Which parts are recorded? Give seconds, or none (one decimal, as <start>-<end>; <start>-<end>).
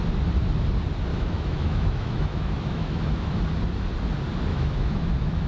0.0-1.1; 3.4-4.5